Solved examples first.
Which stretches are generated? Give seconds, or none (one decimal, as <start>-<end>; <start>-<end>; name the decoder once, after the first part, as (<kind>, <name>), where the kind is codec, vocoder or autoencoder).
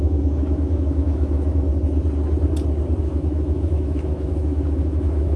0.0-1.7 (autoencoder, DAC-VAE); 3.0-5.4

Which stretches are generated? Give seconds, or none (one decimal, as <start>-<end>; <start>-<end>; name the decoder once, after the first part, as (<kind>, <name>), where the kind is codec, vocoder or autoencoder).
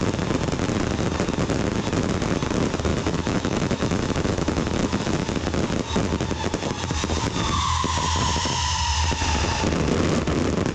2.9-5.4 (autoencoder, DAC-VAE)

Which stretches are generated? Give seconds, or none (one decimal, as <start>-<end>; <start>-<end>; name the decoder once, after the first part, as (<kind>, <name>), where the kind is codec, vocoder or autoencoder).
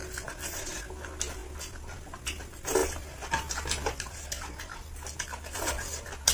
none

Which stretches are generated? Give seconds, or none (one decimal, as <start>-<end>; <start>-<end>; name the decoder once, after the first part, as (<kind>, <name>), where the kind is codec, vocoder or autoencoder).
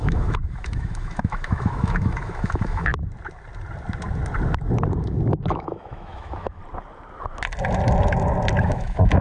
0.0-2.9 (autoencoder, DAC-VAE); 5.3-6.6; 8.6-9.2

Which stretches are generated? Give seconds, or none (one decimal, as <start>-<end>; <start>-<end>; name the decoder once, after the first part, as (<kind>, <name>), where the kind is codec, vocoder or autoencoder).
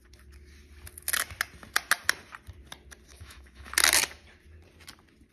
3.1-3.7 (autoencoder, DAC-VAE)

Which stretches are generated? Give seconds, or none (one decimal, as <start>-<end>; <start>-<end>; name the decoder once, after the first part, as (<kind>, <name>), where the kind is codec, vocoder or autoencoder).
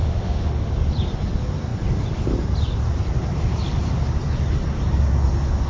0.0-0.7 (autoencoder, DAC-VAE)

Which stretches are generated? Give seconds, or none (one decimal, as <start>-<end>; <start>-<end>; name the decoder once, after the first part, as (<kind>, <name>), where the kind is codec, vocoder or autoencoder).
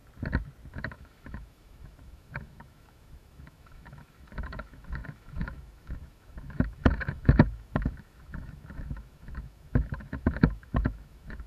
0.7-11.5 (autoencoder, DAC-VAE)